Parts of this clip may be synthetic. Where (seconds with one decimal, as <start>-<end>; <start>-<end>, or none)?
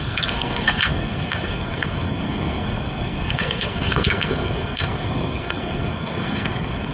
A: 0.0-6.9